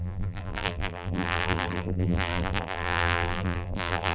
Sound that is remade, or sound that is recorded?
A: remade